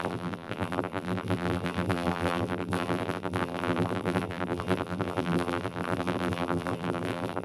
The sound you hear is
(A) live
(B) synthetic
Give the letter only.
B